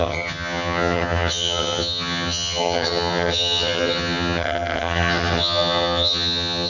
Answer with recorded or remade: remade